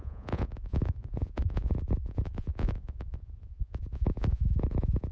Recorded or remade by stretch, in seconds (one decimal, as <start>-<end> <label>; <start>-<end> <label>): 0.0-5.1 remade